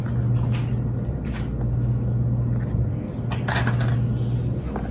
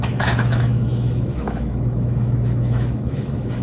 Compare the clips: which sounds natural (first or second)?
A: first